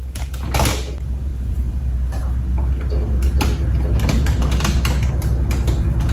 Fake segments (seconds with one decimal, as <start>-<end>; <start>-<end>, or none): 1.3-1.8